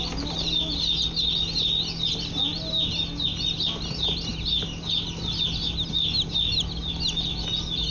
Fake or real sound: real